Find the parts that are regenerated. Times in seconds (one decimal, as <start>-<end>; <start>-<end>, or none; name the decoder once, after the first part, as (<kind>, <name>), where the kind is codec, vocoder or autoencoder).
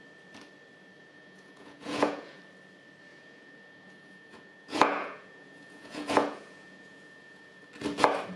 1.0-2.4 (vocoder, Vocos); 3.1-7.6